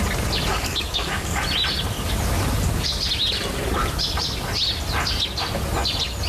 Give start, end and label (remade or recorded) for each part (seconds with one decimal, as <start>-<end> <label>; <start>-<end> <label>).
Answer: 0.0-0.5 recorded; 0.5-1.4 remade; 1.4-6.3 recorded